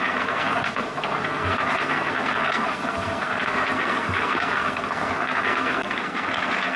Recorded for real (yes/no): no